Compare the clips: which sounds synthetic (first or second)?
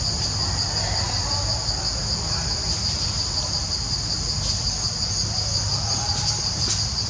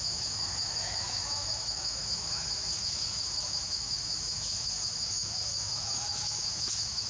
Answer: second